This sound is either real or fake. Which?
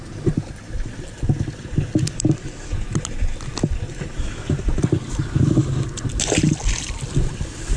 real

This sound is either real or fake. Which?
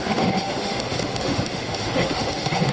fake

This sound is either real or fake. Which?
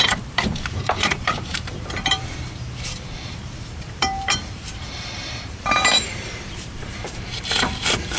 fake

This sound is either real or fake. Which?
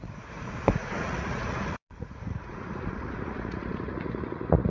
fake